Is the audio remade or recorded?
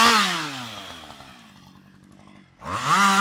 recorded